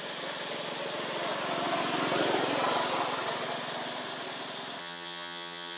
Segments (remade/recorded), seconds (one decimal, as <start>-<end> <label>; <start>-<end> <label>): 0.0-4.8 recorded; 4.8-5.8 remade